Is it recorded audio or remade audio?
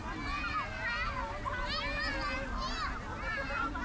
recorded